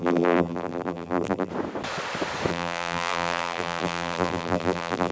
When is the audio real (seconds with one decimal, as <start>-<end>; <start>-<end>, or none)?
1.5-2.5